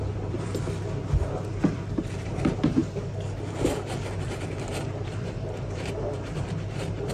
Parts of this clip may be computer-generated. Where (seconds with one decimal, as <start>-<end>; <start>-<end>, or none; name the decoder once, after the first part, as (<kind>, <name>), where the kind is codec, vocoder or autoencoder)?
0.0-0.5 (vocoder, BigVGAN v2); 1.7-2.8; 4.1-7.1